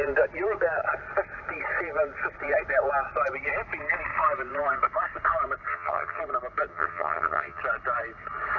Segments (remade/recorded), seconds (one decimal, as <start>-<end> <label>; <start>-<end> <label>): 0.0-5.7 recorded; 5.7-6.2 remade; 6.2-6.7 recorded; 6.7-7.6 remade; 7.6-8.6 recorded